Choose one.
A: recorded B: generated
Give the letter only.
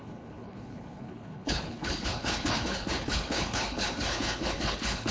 B